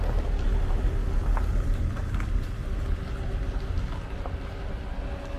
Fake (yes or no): no